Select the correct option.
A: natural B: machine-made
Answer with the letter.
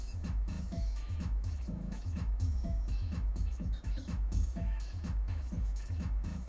B